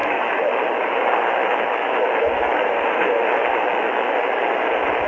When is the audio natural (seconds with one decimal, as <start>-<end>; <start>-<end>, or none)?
0.6-1.4; 4.1-5.1